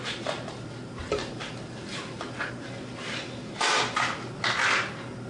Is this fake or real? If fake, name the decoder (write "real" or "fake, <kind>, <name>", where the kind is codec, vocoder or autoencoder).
real